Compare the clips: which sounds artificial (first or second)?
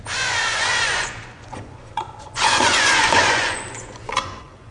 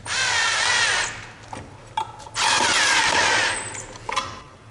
first